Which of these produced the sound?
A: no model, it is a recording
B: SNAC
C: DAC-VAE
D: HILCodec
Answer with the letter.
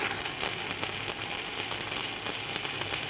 A